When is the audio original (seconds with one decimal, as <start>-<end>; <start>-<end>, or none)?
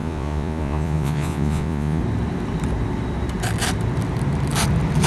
2.0-5.1